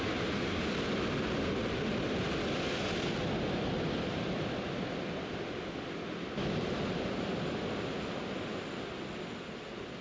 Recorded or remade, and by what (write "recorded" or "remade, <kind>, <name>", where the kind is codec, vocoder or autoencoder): recorded